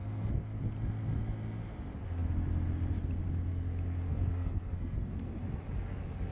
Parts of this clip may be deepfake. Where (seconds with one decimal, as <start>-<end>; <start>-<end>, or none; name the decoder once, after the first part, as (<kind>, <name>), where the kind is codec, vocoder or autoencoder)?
0.0-0.6 (codec, SNAC); 4.1-5.1